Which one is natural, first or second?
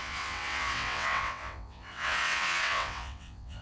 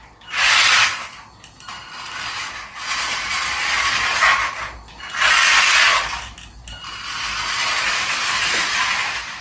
second